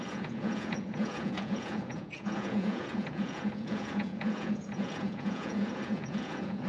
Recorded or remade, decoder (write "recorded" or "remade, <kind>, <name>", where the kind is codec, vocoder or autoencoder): remade, vocoder, Vocos